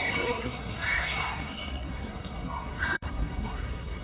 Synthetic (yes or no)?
yes